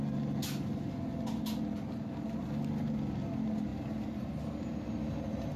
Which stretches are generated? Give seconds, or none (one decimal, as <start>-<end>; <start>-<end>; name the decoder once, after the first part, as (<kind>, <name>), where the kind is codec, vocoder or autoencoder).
none